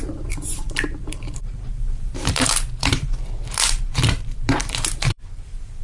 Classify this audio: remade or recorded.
remade